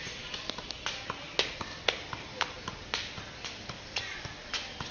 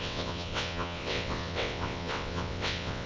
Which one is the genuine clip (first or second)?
first